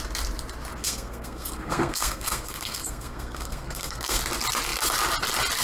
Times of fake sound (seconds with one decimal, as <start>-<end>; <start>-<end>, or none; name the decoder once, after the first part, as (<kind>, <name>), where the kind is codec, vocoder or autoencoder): 0.8-4.2 (codec, SNAC)